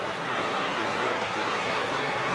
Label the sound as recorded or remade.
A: remade